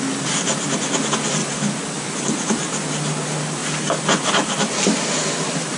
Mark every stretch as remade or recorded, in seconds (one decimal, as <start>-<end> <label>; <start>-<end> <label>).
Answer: 0.0-5.8 recorded